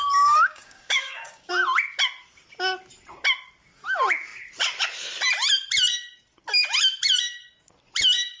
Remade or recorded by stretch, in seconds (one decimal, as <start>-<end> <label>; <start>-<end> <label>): 0.0-1.5 remade; 1.5-8.4 recorded